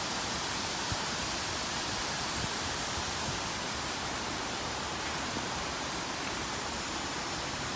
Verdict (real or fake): fake